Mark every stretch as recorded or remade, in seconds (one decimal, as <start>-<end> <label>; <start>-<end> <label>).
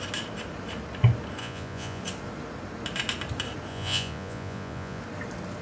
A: 0.0-1.4 recorded; 1.4-2.0 remade; 2.0-3.7 recorded; 3.7-5.0 remade; 5.0-5.6 recorded